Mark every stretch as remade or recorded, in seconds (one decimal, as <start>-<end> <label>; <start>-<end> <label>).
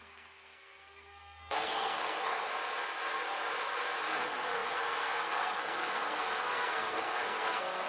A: 0.0-2.5 remade; 2.5-4.0 recorded; 4.0-7.9 remade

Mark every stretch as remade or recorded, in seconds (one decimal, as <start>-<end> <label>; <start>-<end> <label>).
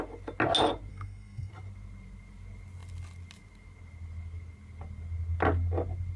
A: 0.0-0.9 recorded; 0.9-1.5 remade; 1.5-6.2 recorded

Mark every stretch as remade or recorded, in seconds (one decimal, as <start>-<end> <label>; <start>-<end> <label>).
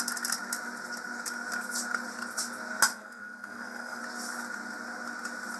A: 0.0-2.9 recorded; 2.9-4.0 remade; 4.0-5.6 recorded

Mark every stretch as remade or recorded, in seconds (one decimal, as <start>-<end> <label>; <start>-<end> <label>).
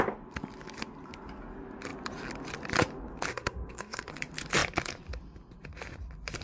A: 0.0-3.3 recorded; 3.3-4.1 remade; 4.1-6.4 recorded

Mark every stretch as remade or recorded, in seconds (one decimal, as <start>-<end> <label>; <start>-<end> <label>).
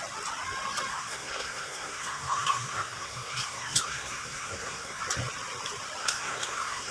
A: 0.0-0.9 recorded; 0.9-5.0 remade; 5.0-6.0 recorded; 6.0-6.9 remade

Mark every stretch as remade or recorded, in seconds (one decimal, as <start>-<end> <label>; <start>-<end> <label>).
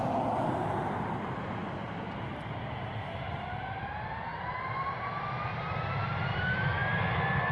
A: 0.0-7.5 recorded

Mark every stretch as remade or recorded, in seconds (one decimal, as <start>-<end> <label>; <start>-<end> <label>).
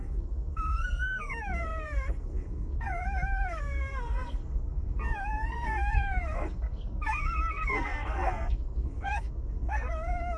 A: 0.0-10.4 remade